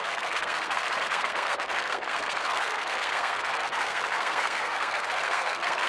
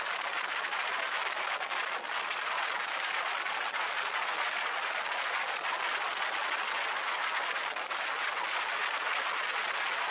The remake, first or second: first